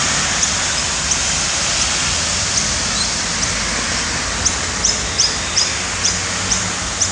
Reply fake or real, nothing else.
real